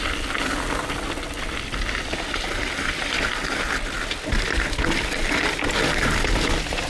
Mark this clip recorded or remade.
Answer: recorded